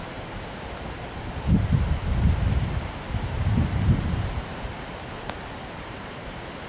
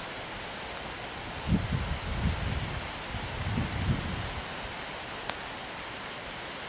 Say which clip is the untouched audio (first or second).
second